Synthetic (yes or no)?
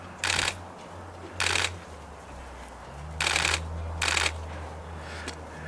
no